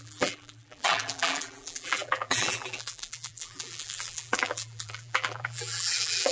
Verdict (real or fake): fake